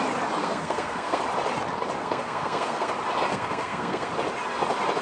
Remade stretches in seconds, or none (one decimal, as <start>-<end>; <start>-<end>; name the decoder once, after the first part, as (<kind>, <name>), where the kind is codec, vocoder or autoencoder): 0.4-1.2 (codec, SNAC); 2.0-2.9; 3.3-4.1